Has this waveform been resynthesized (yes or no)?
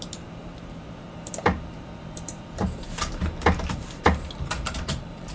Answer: yes